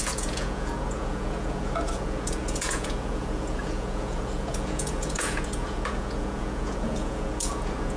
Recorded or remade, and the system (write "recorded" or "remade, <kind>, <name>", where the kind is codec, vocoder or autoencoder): remade, vocoder, Vocos